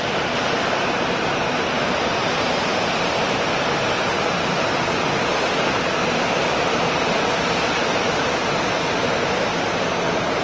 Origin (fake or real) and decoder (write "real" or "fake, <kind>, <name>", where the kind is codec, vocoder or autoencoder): real